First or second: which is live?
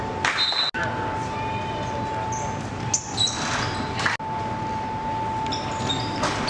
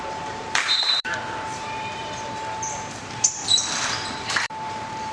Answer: first